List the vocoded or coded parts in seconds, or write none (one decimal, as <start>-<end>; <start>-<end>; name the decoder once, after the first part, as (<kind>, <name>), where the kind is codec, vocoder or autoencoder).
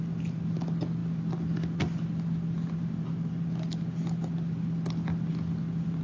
none